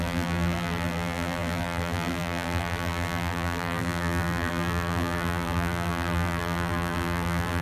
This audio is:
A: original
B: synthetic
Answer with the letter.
B